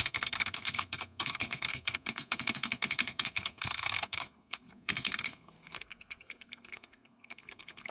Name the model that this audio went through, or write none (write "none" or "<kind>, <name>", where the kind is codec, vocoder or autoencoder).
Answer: codec, SNAC